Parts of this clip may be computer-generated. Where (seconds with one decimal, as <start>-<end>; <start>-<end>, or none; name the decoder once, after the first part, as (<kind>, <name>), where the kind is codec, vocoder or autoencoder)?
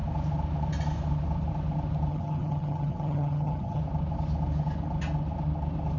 2.1-3.8 (vocoder, HiFi-GAN)